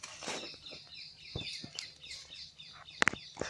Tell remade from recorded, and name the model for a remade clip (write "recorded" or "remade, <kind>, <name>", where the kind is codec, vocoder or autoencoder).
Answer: recorded